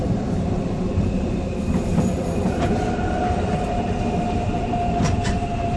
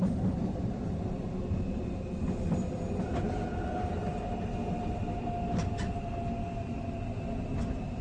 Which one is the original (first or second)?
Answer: second